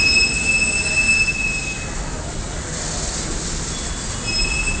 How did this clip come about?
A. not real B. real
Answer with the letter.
B